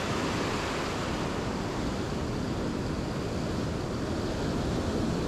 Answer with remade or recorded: recorded